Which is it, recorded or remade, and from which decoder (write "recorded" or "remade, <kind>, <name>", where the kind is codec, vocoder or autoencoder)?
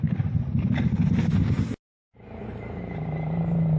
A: recorded